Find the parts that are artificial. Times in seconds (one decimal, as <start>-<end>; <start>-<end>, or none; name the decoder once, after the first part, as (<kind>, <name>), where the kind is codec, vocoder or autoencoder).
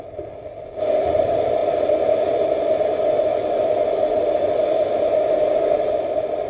none